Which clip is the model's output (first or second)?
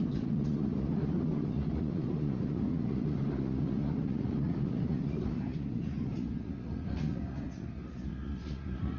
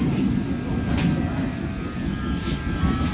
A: first